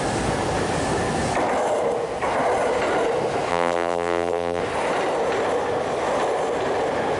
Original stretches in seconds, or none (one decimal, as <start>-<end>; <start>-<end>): 0.0-3.5; 4.6-7.2